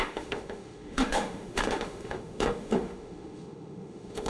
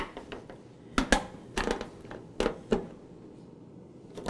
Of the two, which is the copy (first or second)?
first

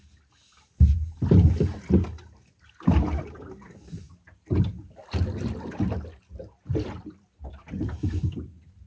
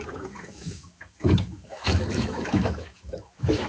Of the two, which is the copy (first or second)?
second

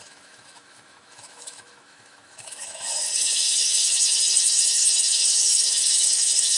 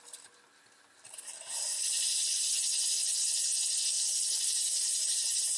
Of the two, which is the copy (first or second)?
first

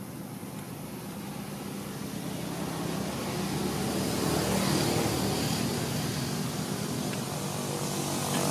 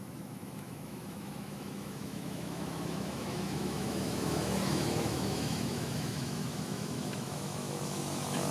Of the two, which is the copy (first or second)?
second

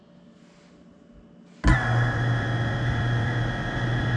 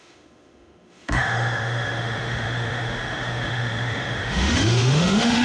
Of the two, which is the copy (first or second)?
second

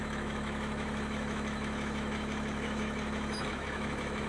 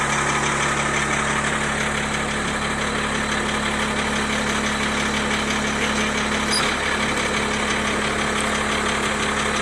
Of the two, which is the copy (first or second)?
first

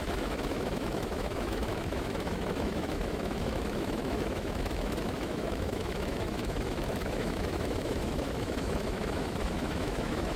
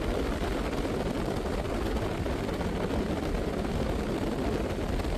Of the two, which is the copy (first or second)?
first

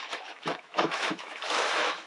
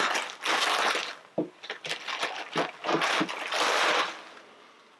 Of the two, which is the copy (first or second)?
first